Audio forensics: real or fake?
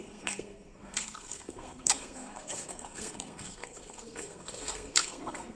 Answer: fake